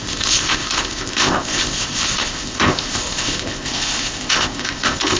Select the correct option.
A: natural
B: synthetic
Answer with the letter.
B